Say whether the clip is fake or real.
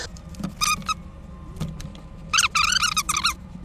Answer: fake